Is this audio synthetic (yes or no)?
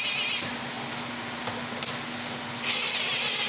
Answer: no